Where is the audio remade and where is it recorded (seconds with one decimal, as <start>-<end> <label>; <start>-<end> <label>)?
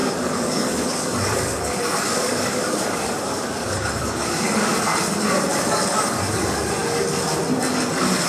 0.0-4.8 remade; 4.8-5.5 recorded; 5.5-6.2 remade; 6.2-8.3 recorded